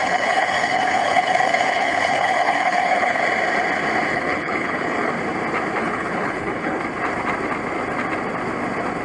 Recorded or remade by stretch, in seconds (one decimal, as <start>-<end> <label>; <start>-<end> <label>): 0.0-3.2 remade; 3.2-4.1 recorded; 4.1-5.1 remade; 5.1-5.8 recorded; 5.8-6.8 remade; 6.8-9.0 recorded